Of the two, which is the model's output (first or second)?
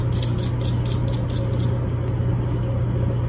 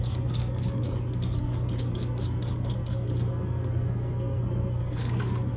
second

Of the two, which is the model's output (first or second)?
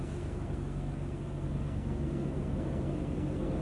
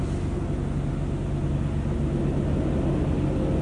first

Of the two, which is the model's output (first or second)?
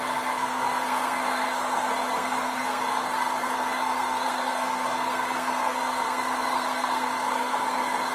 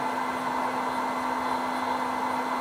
first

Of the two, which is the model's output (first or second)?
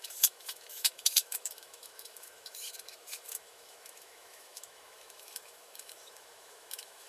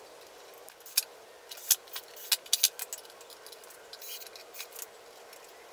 first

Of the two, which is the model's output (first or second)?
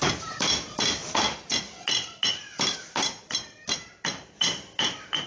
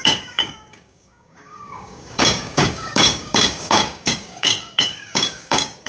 second